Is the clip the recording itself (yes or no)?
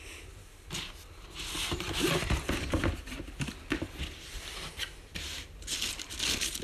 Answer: yes